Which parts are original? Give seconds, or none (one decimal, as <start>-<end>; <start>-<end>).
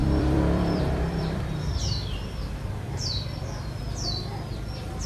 3.1-5.1